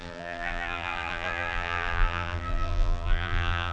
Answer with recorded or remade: remade